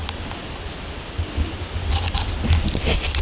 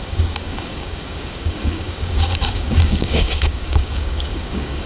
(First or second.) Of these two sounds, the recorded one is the first